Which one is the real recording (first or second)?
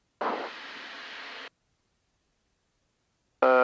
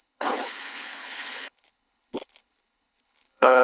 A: first